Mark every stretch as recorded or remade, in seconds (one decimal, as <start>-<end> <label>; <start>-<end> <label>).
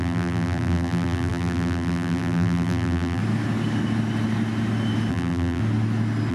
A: 0.0-3.2 remade; 3.2-5.1 recorded; 5.1-5.6 remade; 5.6-6.3 recorded